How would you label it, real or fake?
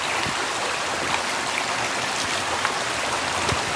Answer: real